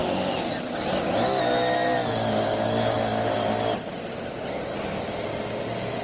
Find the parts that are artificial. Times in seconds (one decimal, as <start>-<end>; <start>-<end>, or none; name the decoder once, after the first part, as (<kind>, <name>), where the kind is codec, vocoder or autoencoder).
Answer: none